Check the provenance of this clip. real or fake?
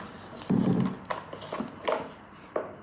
real